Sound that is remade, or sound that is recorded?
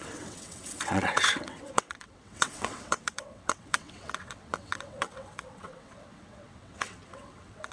remade